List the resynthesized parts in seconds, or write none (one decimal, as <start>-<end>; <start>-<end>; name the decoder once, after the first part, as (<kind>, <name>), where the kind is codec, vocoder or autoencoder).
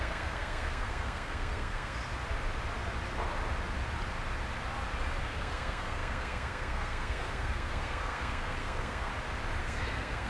0.0-2.0 (codec, SNAC); 5.2-9.1; 9.6-10.3